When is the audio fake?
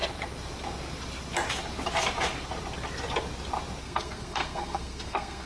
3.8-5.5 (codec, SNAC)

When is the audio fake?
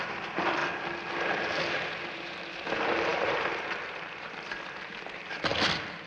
0.0-0.6 (vocoder, BigVGAN v2); 2.1-5.5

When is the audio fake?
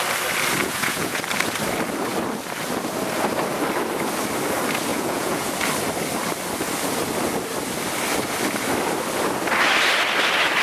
0.6-1.2 (vocoder, Vocos); 4.9-5.5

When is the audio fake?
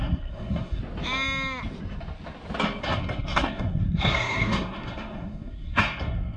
0.0-0.8 (codec, SNAC); 2.8-6.4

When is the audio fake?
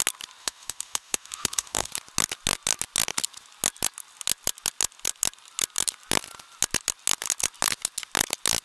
0.4-1.9 (autoencoder, DAC-VAE)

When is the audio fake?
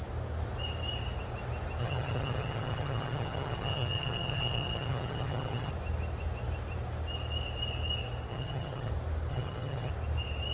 1.8-5.7 (vocoder, HiFi-GAN); 8.3-8.9; 9.3-9.9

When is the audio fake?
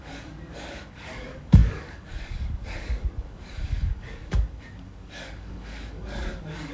0.0-6.7 (codec, DAC)